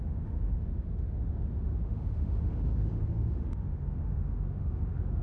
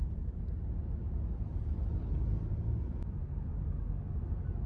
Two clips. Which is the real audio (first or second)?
second